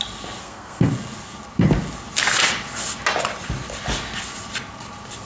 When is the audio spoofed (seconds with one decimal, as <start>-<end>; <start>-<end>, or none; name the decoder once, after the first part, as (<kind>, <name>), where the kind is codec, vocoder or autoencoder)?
0.4-0.9 (codec, SNAC)